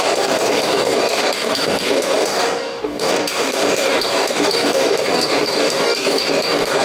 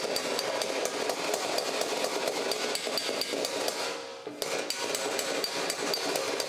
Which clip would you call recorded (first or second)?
second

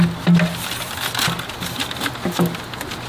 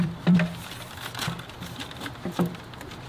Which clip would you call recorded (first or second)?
first